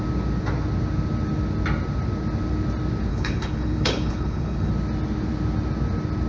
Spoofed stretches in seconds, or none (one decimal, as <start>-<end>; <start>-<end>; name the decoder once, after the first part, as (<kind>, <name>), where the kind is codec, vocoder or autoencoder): 3.1-4.7 (codec, HILCodec)